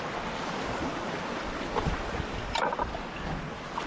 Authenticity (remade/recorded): recorded